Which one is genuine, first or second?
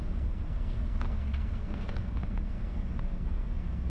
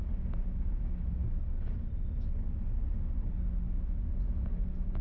second